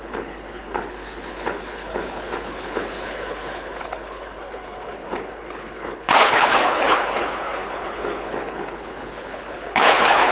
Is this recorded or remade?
remade